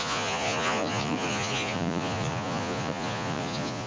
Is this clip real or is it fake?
fake